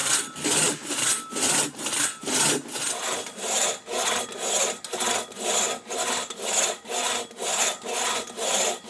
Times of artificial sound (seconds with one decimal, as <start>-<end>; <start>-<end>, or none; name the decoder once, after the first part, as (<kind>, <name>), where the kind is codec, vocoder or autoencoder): none